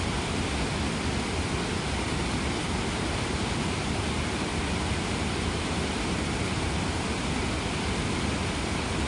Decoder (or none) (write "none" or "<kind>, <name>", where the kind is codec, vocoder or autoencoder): none